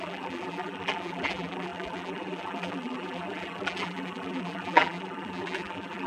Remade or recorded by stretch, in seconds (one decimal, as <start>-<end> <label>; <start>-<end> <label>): 0.0-6.1 remade